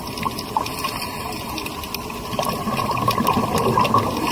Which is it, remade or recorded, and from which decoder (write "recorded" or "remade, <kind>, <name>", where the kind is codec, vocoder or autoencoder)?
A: recorded